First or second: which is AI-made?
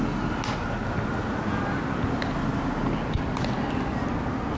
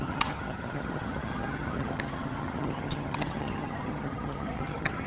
second